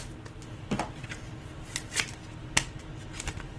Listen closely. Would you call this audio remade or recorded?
recorded